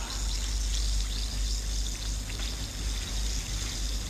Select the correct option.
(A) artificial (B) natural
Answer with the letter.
B